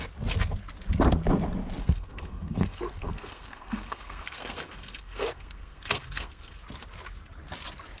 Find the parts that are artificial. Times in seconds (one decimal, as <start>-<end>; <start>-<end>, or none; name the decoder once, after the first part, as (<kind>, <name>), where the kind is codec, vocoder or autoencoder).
1.8-6.6 (codec, SNAC)